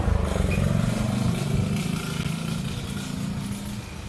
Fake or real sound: real